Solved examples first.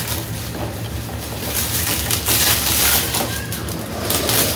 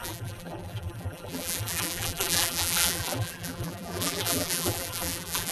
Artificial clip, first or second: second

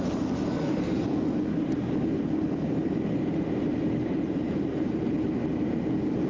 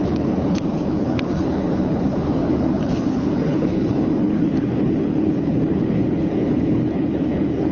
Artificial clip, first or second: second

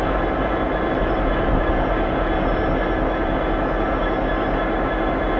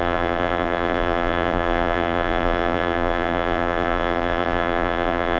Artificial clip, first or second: second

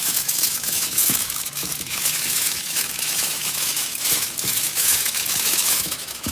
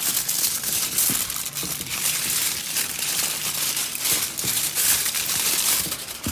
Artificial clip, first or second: first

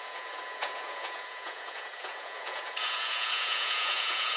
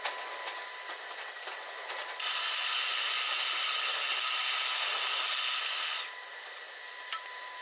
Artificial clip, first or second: first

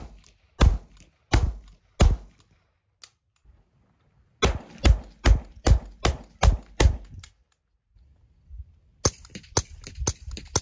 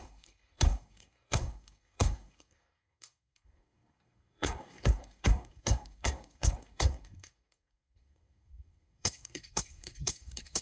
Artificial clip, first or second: second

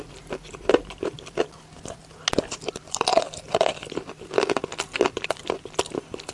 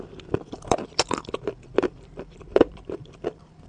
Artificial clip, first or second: second